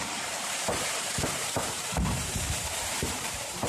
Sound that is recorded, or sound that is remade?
remade